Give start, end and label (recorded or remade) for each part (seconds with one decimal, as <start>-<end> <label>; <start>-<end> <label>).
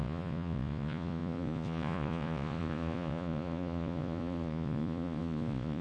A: 0.0-5.8 remade